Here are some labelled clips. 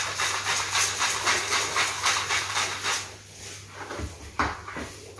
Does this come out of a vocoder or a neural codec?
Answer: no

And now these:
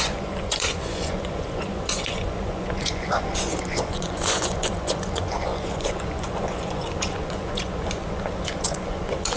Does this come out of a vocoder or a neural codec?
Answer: yes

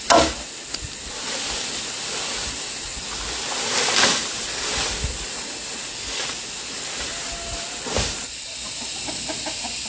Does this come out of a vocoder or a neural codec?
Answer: no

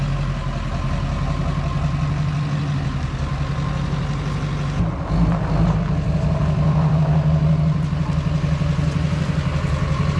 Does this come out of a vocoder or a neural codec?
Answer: no